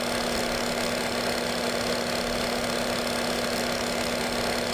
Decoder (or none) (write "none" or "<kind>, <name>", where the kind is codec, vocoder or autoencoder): none